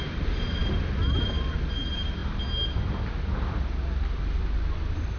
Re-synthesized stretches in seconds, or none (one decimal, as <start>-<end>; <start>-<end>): none